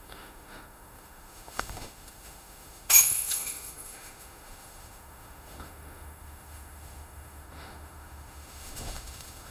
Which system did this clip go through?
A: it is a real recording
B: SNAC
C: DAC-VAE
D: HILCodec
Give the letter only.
C